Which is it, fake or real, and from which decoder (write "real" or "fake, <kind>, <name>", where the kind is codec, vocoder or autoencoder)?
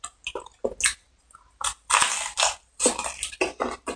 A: real